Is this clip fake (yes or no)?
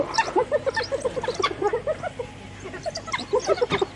no